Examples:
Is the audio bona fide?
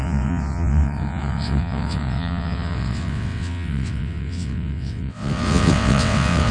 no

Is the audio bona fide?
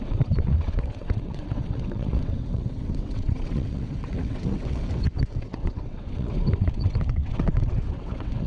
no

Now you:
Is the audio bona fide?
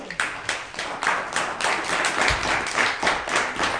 yes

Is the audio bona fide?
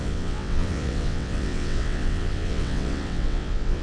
no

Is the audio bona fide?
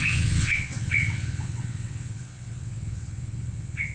no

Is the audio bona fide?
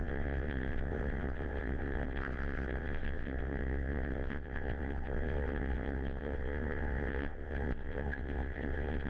no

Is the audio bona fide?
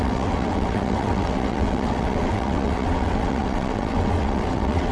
no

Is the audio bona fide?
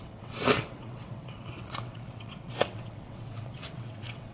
no